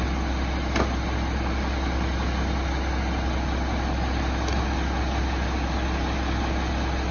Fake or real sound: real